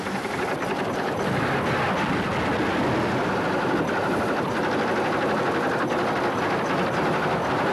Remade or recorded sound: recorded